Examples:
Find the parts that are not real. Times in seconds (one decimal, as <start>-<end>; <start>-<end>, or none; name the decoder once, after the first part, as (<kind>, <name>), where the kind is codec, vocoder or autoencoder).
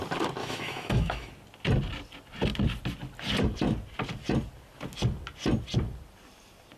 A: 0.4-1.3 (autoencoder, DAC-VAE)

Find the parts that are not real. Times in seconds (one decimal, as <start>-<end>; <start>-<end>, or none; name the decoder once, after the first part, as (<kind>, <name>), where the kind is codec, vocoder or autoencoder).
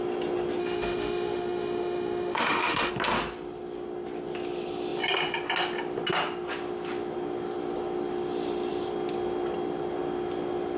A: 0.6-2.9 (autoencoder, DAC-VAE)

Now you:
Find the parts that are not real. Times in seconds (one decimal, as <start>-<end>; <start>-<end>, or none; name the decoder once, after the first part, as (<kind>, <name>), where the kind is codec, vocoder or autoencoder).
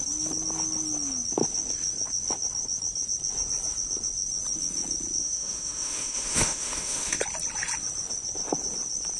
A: 5.2-7.2 (autoencoder, DAC-VAE)